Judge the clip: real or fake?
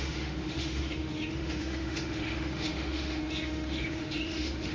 fake